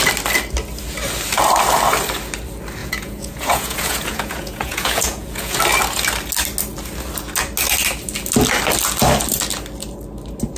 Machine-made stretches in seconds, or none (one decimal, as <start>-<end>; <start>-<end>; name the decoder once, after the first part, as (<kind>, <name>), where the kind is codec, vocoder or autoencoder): 2.8-5.6 (vocoder, Vocos)